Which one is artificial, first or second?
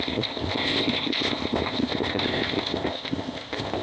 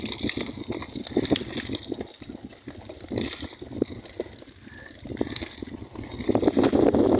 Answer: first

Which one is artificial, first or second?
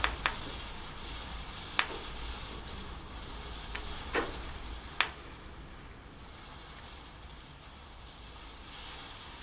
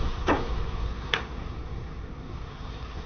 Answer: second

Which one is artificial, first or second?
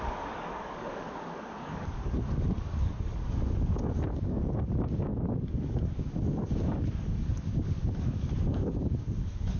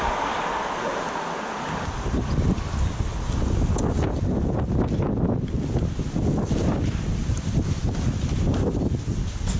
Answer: first